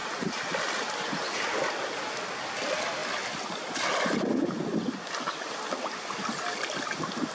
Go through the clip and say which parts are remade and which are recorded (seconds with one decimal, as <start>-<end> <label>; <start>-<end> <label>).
0.0-7.3 recorded